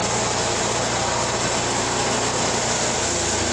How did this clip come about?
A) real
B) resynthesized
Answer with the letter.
A